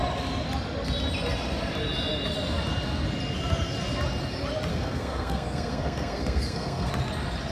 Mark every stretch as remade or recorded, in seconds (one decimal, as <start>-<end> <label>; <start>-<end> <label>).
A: 0.0-4.7 recorded; 4.7-6.9 remade; 6.9-7.5 recorded

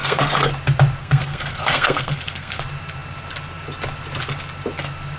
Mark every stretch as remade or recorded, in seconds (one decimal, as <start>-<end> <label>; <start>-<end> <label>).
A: 0.0-0.5 remade; 0.5-1.0 recorded; 1.0-2.6 remade; 2.6-5.2 recorded

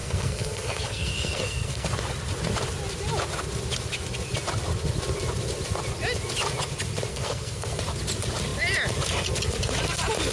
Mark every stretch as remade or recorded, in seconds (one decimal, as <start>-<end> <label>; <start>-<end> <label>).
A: 0.0-1.9 remade; 1.9-7.1 recorded; 7.1-7.8 remade; 7.8-10.3 recorded

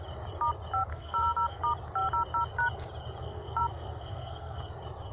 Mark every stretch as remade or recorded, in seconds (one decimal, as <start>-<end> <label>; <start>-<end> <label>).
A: 0.0-0.9 recorded; 0.9-1.6 remade; 1.6-3.2 recorded; 3.2-4.6 remade; 4.6-5.1 recorded

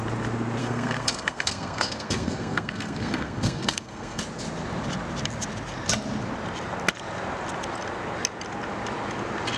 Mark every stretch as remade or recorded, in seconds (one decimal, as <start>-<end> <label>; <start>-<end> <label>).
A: 0.0-0.6 recorded; 0.6-4.2 remade; 4.2-9.6 recorded

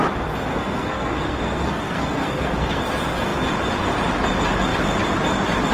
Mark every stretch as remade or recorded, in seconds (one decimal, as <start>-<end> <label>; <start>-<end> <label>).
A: 0.0-0.5 recorded; 0.5-2.8 remade; 2.8-5.7 recorded

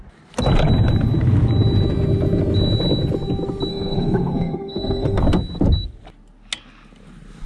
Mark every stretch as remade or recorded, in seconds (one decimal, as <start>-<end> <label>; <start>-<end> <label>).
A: 0.0-3.7 recorded; 3.7-5.2 remade; 5.2-7.5 recorded